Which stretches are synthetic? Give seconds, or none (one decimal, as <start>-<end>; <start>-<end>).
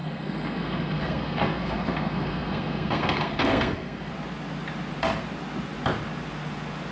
0.0-4.1